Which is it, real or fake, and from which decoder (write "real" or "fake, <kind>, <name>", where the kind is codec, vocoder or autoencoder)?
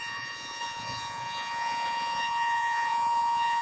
fake, vocoder, Vocos